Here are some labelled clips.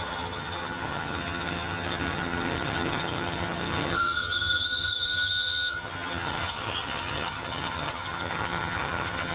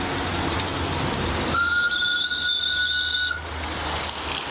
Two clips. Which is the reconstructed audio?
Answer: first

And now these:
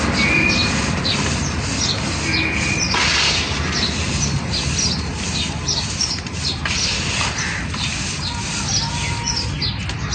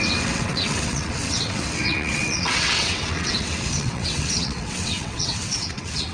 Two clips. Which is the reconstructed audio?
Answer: second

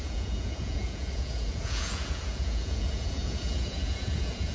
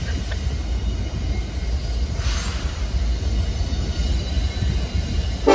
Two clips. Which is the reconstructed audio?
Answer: first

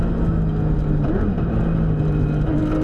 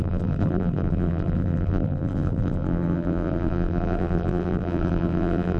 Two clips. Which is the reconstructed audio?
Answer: second